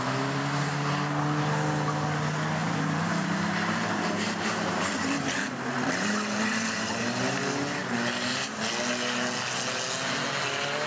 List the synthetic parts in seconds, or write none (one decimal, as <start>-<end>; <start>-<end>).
2.6-7.0